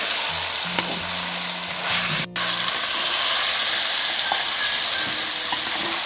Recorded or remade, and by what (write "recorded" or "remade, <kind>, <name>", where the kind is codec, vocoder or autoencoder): recorded